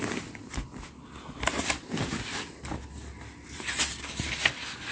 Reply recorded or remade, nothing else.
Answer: recorded